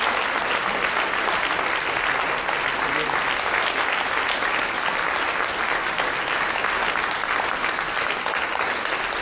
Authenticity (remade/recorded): recorded